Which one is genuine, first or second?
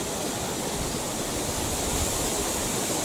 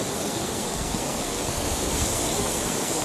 first